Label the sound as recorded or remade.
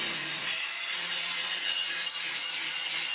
remade